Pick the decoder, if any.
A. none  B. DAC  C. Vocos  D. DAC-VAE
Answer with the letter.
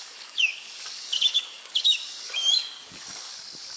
B